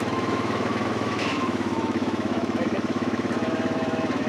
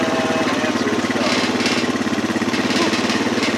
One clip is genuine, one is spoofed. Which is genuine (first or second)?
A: second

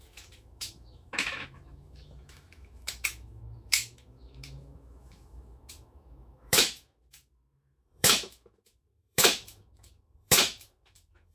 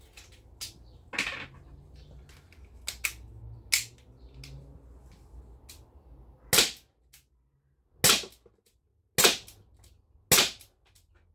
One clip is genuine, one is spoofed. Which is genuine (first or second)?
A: second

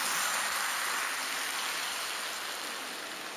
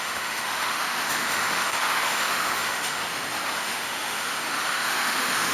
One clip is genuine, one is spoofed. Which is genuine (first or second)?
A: first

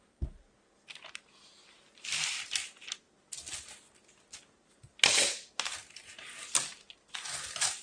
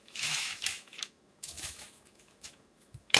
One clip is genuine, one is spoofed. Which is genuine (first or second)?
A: first